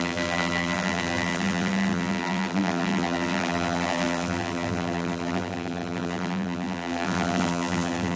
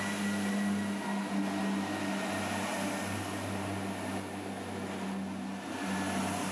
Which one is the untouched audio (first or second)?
second